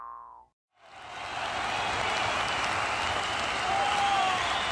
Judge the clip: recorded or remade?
recorded